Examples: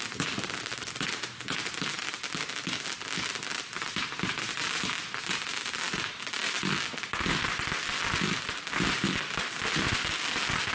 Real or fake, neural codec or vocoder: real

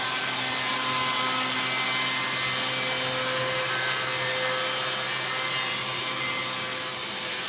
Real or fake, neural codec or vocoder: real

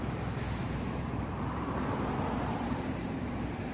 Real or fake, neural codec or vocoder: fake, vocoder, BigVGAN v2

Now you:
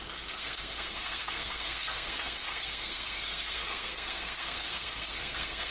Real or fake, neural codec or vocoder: fake, codec, SNAC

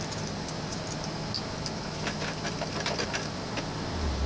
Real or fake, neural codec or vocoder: real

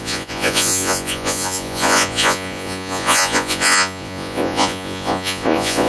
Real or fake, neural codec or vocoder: fake, vocoder, Vocos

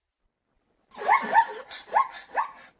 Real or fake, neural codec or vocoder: real